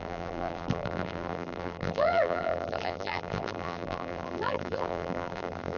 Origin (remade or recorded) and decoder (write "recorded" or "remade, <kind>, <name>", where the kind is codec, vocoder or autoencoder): remade, vocoder, BigVGAN v2